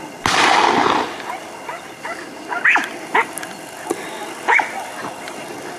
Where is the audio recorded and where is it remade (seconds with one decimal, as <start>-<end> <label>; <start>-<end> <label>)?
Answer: 0.0-5.8 recorded